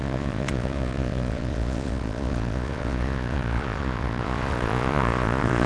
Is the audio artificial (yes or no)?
yes